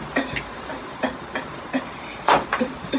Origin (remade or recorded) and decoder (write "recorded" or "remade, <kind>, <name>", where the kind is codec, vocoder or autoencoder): remade, vocoder, BigVGAN v2